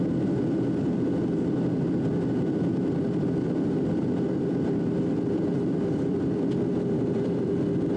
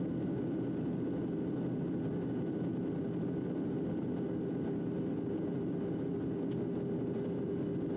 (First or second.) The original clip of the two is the second